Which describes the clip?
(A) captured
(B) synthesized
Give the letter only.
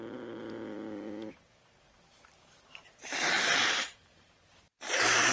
B